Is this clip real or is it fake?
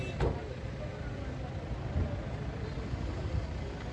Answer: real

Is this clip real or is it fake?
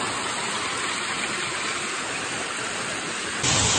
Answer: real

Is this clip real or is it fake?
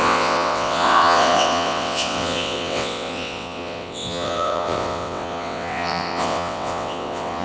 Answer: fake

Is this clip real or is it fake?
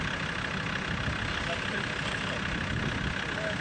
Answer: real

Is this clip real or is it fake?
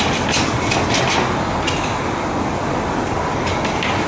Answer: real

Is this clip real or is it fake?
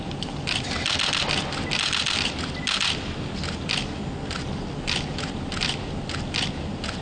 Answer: real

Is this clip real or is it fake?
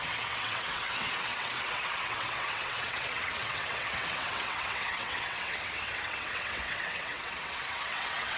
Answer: fake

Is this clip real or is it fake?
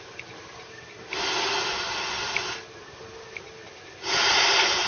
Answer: real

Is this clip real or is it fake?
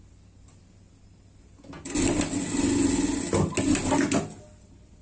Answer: real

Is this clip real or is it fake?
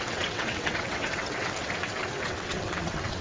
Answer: fake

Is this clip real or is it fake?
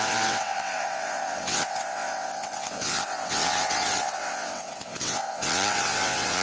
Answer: fake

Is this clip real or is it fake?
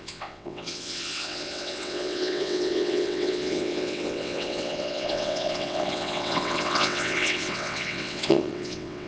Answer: fake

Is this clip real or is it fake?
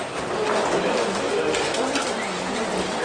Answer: real